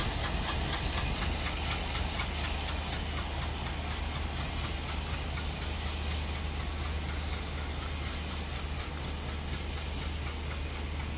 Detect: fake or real real